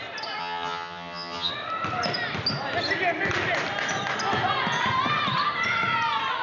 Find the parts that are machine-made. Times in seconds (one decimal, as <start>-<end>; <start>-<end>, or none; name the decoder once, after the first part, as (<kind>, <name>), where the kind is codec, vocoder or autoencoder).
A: 0.4-1.5 (vocoder, HiFi-GAN)